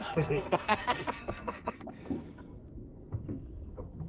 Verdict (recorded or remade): remade